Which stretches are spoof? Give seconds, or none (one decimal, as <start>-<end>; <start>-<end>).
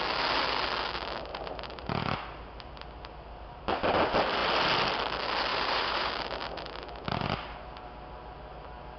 1.3-2.0; 5.5-6.1